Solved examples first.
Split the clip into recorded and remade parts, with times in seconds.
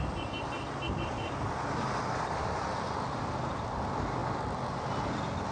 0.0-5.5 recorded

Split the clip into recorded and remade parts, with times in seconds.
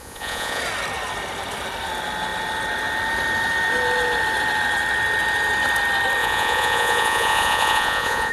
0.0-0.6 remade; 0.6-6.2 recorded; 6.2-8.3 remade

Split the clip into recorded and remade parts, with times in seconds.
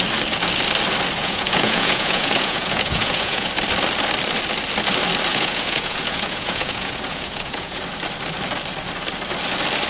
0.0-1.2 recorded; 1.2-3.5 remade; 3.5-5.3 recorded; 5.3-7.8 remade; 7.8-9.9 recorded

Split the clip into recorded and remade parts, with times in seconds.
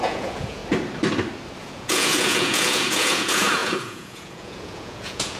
0.0-0.6 remade; 0.6-1.6 recorded; 1.6-5.4 remade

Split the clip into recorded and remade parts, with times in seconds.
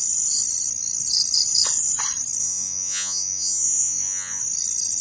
0.0-2.4 recorded; 2.4-4.4 remade; 4.4-5.0 recorded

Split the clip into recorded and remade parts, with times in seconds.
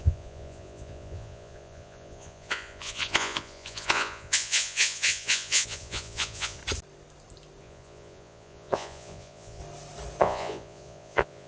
0.0-6.6 remade; 6.6-7.6 recorded; 7.6-9.6 remade; 9.6-10.2 recorded; 10.2-11.5 remade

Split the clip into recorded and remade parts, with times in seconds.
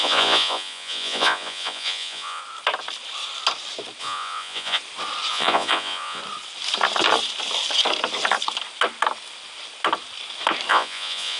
0.0-2.4 remade; 2.4-4.0 recorded; 4.0-4.8 remade; 4.8-5.3 recorded; 5.3-6.2 remade; 6.2-10.7 recorded; 10.7-11.4 remade